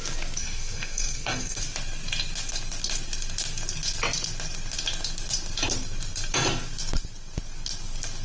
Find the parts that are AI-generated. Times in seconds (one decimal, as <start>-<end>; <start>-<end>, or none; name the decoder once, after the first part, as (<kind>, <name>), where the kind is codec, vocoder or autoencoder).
0.4-1.6 (codec, SNAC)